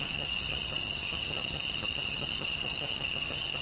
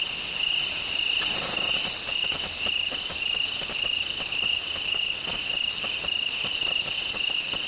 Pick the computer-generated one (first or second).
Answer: first